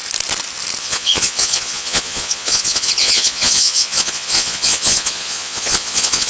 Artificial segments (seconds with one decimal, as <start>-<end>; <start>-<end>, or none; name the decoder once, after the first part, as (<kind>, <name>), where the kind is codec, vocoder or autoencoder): 0.8-6.3 (vocoder, Vocos)